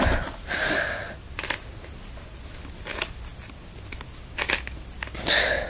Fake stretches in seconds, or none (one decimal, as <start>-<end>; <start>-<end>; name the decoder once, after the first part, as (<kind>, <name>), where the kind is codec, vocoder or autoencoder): none